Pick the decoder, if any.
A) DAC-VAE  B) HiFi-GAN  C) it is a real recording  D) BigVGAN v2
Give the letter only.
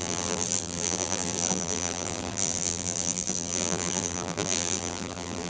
D